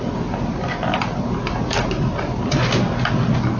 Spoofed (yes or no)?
no